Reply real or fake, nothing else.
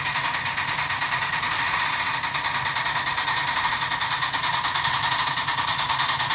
real